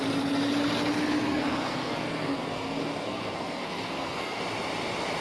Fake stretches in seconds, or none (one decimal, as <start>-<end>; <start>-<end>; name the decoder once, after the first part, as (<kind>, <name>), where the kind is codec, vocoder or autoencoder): 1.3-4.4 (codec, SNAC)